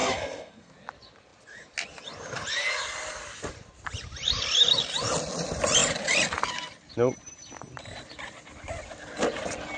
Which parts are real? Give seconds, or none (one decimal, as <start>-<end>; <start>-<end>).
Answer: 0.7-9.8